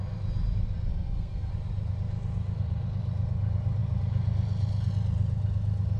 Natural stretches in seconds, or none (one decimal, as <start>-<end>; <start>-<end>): 0.0-0.9; 1.5-6.0